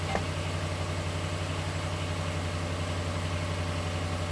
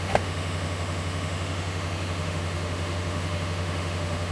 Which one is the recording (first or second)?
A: first